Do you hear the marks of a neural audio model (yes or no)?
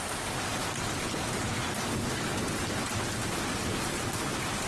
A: no